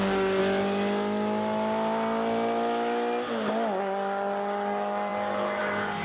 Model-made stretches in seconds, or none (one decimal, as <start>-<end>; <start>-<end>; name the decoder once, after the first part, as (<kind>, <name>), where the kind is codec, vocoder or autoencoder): 0.0-0.4 (codec, DAC); 3.8-6.0